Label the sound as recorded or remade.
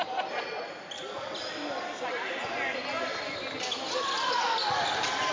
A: recorded